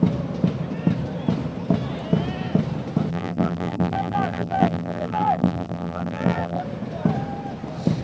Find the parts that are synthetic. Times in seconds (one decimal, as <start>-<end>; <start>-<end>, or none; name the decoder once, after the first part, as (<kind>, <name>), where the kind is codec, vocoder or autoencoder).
3.1-6.6 (vocoder, BigVGAN v2)